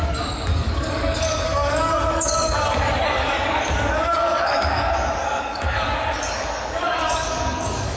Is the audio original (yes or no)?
no